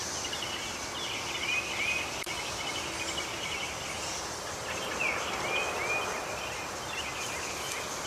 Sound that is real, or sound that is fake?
real